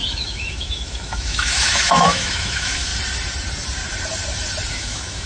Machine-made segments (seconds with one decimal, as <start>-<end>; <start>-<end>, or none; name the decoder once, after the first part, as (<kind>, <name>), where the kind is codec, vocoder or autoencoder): 0.0-2.9 (autoencoder, DAC-VAE); 4.7-5.3